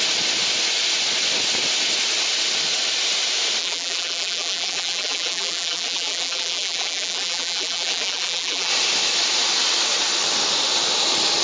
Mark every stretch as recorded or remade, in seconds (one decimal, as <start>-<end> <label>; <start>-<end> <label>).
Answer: 0.0-3.6 recorded; 3.6-8.7 remade; 8.7-11.4 recorded